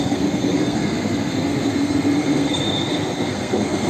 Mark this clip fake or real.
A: fake